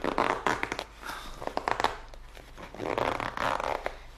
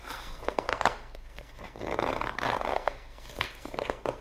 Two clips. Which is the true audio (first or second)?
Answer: first